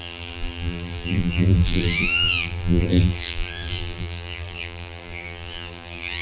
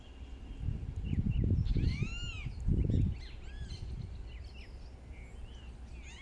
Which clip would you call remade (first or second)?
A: first